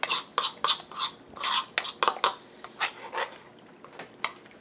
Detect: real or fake real